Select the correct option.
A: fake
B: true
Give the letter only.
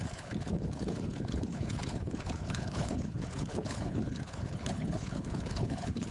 A